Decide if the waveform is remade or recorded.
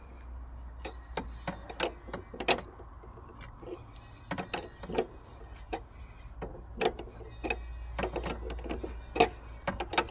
recorded